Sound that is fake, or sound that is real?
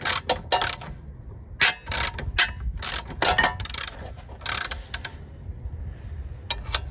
real